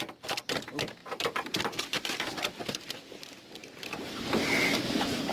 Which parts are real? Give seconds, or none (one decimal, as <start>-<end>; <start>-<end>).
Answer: 0.0-1.0; 1.6-3.6; 4.4-5.3